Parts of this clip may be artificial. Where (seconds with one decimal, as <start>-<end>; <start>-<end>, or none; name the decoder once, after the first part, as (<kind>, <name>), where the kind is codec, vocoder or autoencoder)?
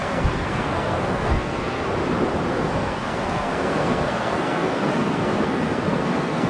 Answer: 0.0-1.9 (codec, SNAC); 2.5-6.5